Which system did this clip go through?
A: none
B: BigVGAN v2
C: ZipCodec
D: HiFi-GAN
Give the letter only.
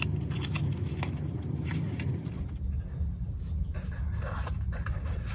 A